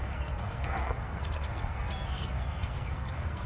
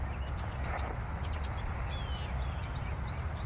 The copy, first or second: first